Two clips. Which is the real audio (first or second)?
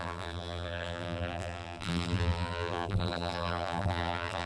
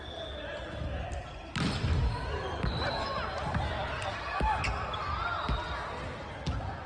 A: second